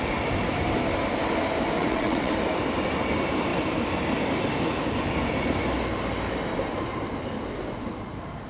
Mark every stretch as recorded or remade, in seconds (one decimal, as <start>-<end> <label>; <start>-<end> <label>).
0.0-1.8 recorded; 1.8-2.3 remade; 2.3-8.5 recorded